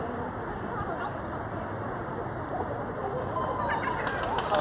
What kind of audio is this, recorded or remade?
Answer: recorded